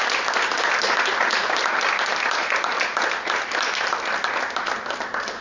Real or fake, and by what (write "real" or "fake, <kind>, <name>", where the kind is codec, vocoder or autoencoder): real